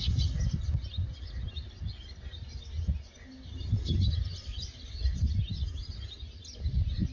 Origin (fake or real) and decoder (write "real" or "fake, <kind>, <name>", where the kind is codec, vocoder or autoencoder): real